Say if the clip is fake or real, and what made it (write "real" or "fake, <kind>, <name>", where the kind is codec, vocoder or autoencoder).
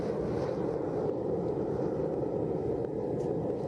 real